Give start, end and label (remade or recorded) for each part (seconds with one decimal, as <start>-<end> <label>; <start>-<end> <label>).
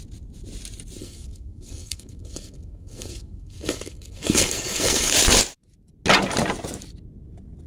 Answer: 0.0-1.0 recorded; 1.0-5.1 remade; 5.1-7.7 recorded